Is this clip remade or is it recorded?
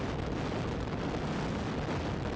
recorded